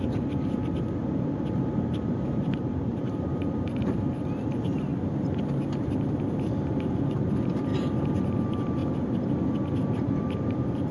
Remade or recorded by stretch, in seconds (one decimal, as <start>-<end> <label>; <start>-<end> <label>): 0.0-1.0 recorded; 1.0-4.2 remade; 4.2-7.7 recorded; 7.7-8.2 remade; 8.2-10.9 recorded